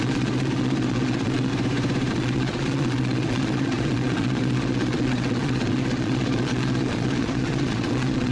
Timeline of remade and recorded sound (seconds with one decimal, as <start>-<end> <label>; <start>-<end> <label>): 0.0-1.5 remade; 1.5-2.1 recorded; 2.1-8.3 remade

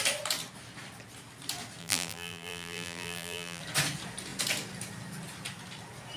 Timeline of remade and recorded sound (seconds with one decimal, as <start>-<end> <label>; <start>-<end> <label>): 0.0-1.8 recorded; 1.8-3.6 remade; 3.6-6.2 recorded

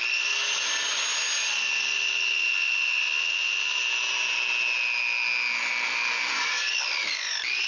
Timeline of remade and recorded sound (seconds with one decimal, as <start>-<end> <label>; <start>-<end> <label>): 0.0-7.7 recorded

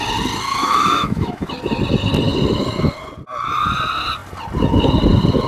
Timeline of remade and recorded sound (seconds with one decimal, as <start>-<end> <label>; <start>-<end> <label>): 0.0-0.6 recorded; 0.6-1.5 remade; 1.5-5.5 recorded

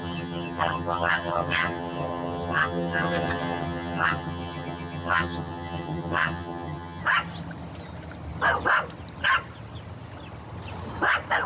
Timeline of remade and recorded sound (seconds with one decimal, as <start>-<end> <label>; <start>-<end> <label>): 0.0-7.0 remade; 7.0-11.5 recorded

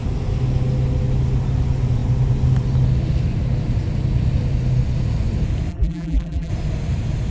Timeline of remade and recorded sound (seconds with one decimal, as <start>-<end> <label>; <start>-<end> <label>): 0.0-5.7 recorded; 5.7-6.5 remade; 6.5-7.3 recorded

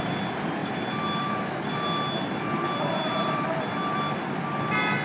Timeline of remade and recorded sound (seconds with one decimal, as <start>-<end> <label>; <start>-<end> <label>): 0.0-5.0 recorded